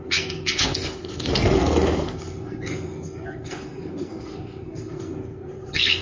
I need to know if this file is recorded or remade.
remade